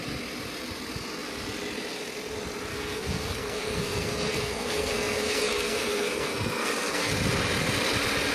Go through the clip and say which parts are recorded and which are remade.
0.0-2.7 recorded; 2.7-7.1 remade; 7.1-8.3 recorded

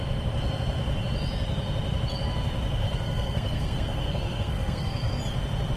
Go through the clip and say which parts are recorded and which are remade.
0.0-2.8 recorded; 2.8-5.2 remade; 5.2-5.8 recorded

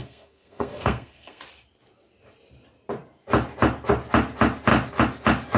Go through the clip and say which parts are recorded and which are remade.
0.0-1.4 remade; 1.4-5.6 recorded

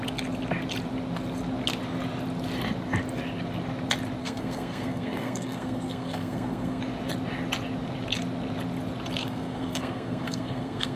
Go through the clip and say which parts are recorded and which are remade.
0.0-4.2 recorded; 4.2-6.8 remade; 6.8-9.2 recorded; 9.2-11.0 remade

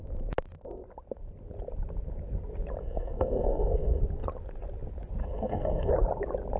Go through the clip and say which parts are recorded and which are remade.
0.0-2.8 recorded; 2.8-4.0 remade; 4.0-5.2 recorded; 5.2-5.9 remade; 5.9-6.6 recorded

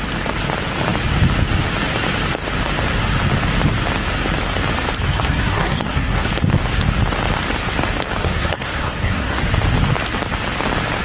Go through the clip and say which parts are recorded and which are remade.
0.0-5.1 recorded; 5.1-6.3 remade; 6.3-8.2 recorded; 8.2-9.5 remade; 9.5-11.0 recorded

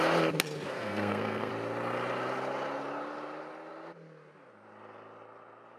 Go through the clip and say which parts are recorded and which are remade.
0.0-0.7 recorded; 0.7-1.5 remade; 1.5-5.8 recorded